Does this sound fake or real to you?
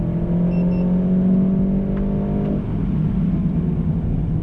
real